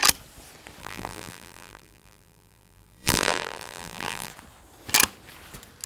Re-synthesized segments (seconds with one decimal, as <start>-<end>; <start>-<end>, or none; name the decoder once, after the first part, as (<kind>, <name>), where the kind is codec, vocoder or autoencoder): 0.8-4.3 (vocoder, BigVGAN v2)